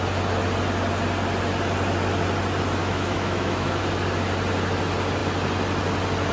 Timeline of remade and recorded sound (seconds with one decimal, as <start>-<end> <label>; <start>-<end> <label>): 0.0-2.8 recorded; 2.8-3.8 remade; 3.8-6.3 recorded